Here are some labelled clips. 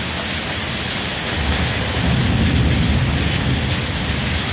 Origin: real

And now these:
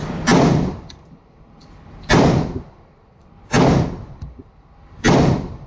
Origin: fake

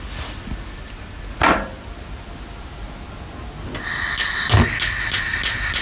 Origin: real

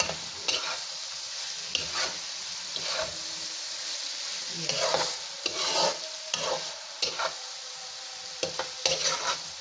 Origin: real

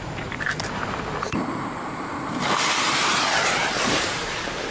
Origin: fake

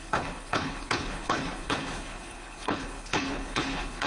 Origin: fake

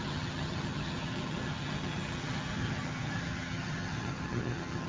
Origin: fake